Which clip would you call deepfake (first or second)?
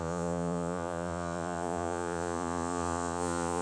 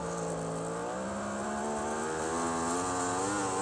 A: first